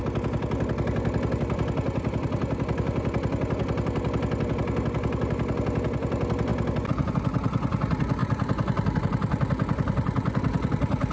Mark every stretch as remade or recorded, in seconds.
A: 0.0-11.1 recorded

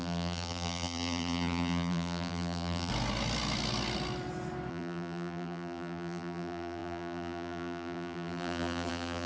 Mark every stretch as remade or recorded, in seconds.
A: 0.0-2.9 remade; 2.9-4.7 recorded; 4.7-9.3 remade

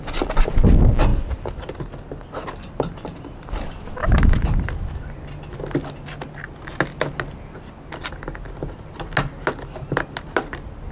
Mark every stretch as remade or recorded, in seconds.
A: 0.0-10.9 recorded

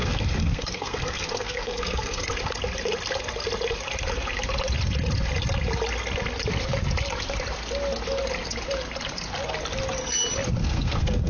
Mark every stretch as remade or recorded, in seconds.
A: 0.0-2.3 remade; 2.3-10.6 recorded; 10.6-11.3 remade

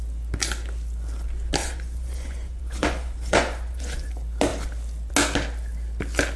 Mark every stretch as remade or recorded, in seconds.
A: 0.0-1.6 recorded; 1.6-4.1 remade; 4.1-6.4 recorded